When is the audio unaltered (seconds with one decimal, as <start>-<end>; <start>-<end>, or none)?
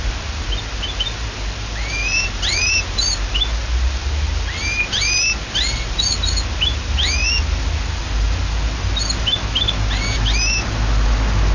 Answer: 0.0-11.5